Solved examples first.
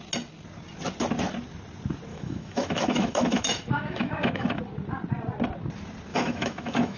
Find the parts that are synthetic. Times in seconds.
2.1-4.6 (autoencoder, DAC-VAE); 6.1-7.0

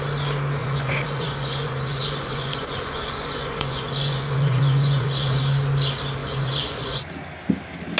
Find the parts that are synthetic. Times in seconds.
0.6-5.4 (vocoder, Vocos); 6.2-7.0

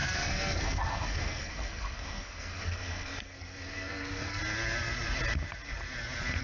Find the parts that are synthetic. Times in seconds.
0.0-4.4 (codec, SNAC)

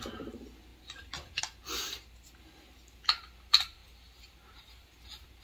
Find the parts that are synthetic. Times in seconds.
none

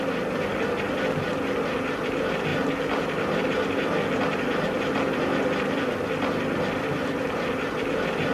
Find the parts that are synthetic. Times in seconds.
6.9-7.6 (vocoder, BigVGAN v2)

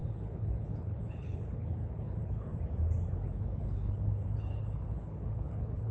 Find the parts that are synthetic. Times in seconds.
0.0-2.5 (codec, HILCodec); 3.1-5.9